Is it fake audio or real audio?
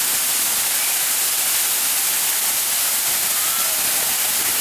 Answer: real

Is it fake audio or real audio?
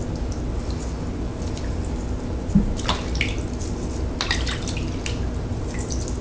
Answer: real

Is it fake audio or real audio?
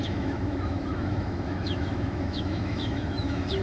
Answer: fake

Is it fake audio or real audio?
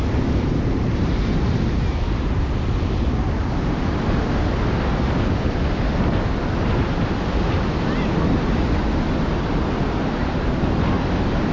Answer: real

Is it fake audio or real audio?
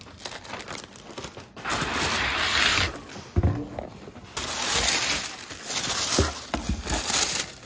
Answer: real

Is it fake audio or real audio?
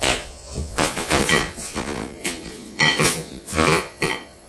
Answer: fake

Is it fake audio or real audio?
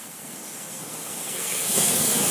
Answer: fake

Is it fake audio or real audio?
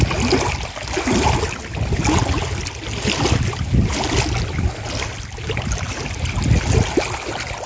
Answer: real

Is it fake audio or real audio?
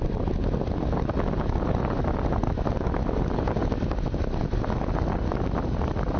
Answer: real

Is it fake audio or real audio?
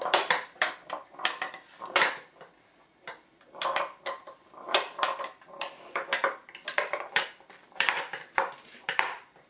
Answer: fake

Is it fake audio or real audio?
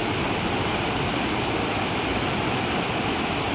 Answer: real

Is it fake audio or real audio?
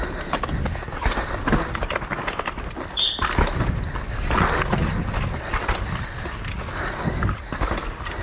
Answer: real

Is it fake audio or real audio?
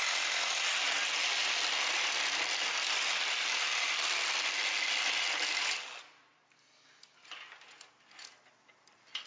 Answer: real